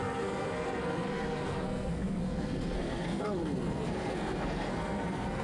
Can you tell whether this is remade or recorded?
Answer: remade